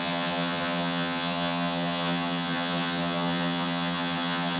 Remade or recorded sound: remade